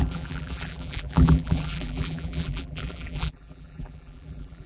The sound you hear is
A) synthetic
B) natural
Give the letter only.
A